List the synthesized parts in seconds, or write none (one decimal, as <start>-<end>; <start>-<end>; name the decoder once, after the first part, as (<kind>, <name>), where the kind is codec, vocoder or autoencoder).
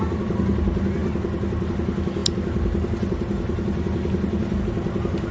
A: none